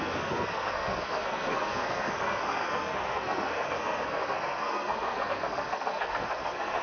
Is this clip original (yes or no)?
no